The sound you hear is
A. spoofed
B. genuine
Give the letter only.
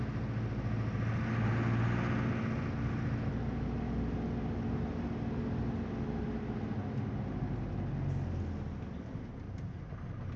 B